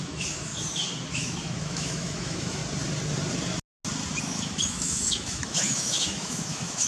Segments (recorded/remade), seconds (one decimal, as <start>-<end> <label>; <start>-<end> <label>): 0.0-0.5 remade; 0.5-1.1 recorded; 1.1-2.6 remade; 2.6-4.2 recorded; 4.2-6.9 remade